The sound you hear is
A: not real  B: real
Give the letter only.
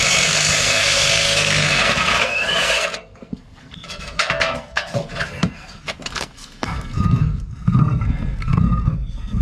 A